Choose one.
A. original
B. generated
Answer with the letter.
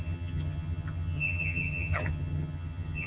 B